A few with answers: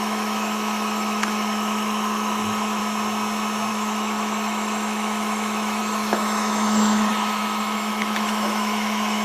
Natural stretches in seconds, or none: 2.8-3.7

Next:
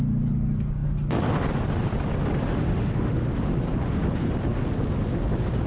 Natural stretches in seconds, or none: 0.0-2.5; 3.3-5.7

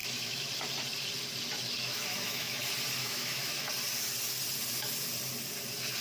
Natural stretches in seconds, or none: 0.5-1.8; 2.6-3.0; 3.7-6.0

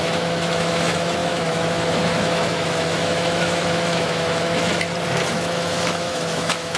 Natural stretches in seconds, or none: 4.7-5.3

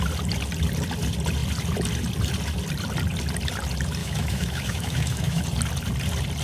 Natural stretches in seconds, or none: 0.0-4.0; 5.4-6.4

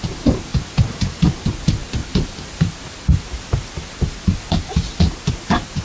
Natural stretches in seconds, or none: 0.0-5.8

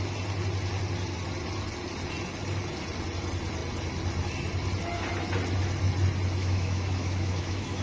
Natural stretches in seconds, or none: 0.0-6.4

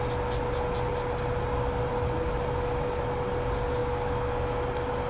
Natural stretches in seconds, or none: 0.0-3.8; 4.3-5.1